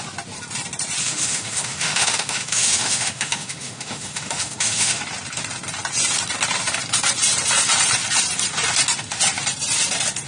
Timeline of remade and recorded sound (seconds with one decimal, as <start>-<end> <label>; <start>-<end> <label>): 0.0-1.0 recorded; 1.0-5.0 remade; 5.0-10.3 recorded